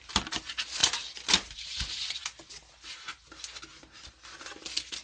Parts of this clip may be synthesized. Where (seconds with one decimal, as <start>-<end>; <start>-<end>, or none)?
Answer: none